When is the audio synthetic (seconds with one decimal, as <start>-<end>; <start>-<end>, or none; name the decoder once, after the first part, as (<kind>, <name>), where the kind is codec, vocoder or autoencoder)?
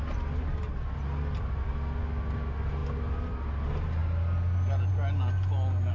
none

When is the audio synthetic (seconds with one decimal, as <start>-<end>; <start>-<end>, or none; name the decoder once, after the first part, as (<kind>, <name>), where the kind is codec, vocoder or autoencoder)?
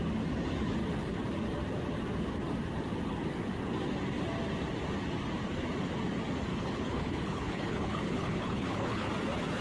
6.5-9.1 (codec, HILCodec)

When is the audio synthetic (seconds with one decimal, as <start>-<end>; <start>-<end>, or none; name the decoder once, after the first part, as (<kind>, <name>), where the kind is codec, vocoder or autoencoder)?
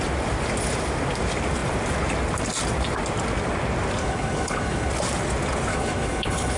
4.0-4.9 (codec, HILCodec); 5.7-6.6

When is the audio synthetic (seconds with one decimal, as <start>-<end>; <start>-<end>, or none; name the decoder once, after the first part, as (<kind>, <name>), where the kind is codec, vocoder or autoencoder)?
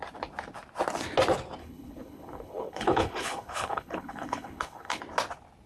1.6-5.0 (codec, HILCodec)